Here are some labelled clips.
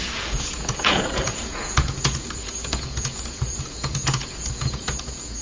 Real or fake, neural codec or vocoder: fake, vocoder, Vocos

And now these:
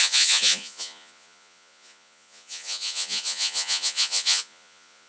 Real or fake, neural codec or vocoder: fake, vocoder, Vocos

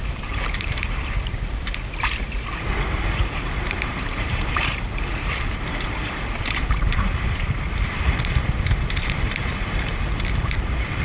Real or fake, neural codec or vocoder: fake, vocoder, BigVGAN v2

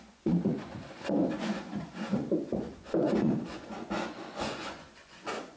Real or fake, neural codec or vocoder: fake, vocoder, Vocos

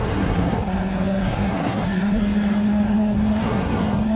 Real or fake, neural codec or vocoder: fake, codec, SNAC